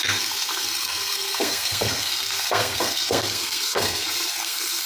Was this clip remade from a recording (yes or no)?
yes